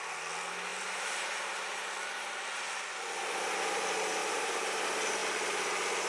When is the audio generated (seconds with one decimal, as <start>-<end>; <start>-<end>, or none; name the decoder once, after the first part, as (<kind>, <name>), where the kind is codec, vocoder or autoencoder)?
0.7-1.6 (vocoder, BigVGAN v2); 4.2-4.8